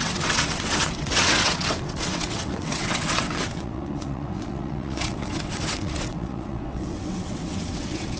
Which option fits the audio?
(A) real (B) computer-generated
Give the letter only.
B